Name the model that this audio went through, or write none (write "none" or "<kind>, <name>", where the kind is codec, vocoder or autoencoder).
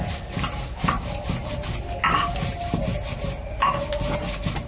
none